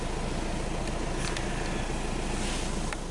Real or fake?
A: real